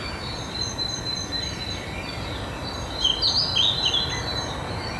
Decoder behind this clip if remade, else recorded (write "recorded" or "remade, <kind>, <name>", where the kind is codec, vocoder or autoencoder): recorded